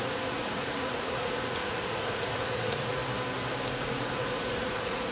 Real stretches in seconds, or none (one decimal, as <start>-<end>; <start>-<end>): 3.0-3.7